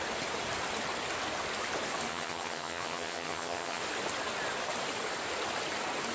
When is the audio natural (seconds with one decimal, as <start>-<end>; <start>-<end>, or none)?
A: 0.0-2.1; 3.8-6.1